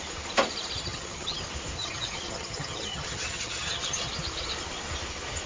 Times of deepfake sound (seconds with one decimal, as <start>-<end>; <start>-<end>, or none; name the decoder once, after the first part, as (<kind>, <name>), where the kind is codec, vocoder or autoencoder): 0.8-1.4 (vocoder, HiFi-GAN); 1.8-4.1